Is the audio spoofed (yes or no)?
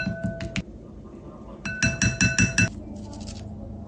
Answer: no